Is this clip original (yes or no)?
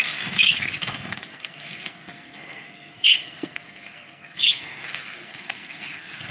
no